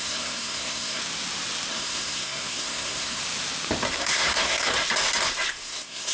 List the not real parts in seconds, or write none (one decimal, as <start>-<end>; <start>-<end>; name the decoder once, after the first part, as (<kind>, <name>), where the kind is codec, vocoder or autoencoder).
0.0-1.0 (codec, SNAC); 1.7-3.2; 4.0-4.7; 5.5-6.1